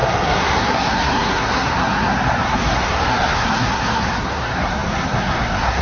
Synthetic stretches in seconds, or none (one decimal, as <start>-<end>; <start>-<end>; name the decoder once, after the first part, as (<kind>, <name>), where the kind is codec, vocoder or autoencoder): 0.0-5.8 (codec, SNAC)